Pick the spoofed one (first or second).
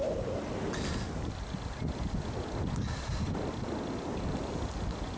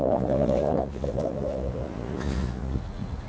second